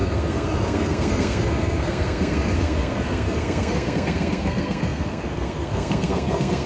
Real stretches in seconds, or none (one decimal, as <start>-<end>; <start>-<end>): none